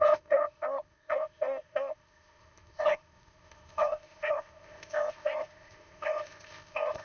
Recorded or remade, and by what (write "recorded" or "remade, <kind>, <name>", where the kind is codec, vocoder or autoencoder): remade, codec, ZipCodec